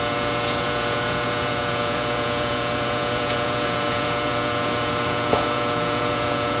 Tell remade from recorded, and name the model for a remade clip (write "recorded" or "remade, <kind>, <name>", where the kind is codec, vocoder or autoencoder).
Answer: remade, vocoder, Vocos